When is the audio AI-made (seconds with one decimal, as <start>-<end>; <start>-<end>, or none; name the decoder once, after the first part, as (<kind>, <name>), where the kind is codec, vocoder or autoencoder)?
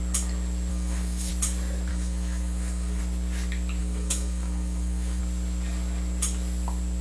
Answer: 0.7-1.3 (codec, SNAC); 1.9-3.0; 3.8-5.2